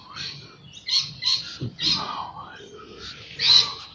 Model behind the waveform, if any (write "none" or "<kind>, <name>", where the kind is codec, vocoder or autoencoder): none